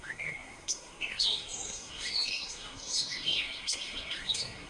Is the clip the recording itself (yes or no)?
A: no